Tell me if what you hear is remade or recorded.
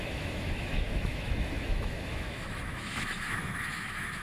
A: remade